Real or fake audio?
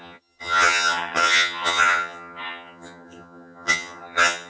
fake